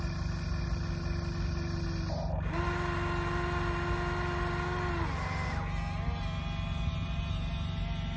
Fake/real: real